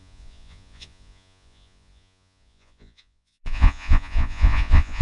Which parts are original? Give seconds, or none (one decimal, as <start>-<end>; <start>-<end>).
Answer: none